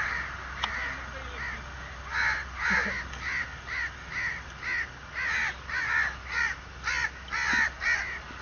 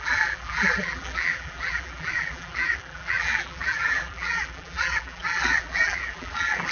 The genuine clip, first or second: first